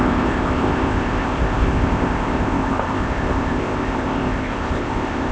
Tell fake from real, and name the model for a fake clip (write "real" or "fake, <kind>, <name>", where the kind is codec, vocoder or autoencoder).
fake, codec, ZipCodec